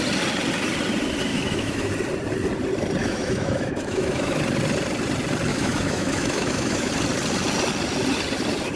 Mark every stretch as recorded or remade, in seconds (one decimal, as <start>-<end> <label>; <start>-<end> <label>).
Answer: 0.0-1.3 recorded; 1.3-1.9 remade; 1.9-3.0 recorded; 3.0-4.4 remade; 4.4-5.5 recorded; 5.5-6.9 remade; 6.9-8.8 recorded